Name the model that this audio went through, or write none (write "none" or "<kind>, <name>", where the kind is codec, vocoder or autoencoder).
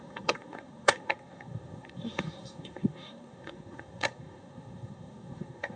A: codec, SNAC